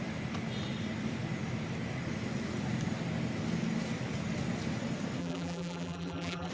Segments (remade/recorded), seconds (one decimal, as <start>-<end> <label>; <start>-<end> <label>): 0.0-5.2 recorded; 5.2-6.5 remade